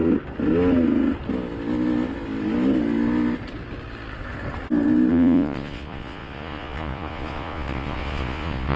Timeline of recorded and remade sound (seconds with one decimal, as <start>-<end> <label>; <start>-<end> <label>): 0.0-5.1 recorded; 5.1-8.8 remade